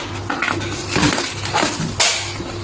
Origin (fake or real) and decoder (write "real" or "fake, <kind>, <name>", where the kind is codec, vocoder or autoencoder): real